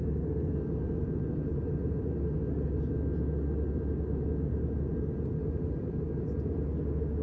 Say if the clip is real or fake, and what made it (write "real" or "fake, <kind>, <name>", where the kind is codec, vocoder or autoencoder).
real